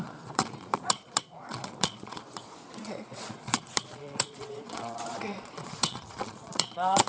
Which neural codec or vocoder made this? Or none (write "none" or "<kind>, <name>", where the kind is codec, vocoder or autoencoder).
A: vocoder, Vocos